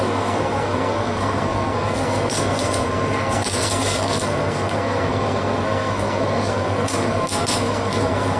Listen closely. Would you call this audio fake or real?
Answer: fake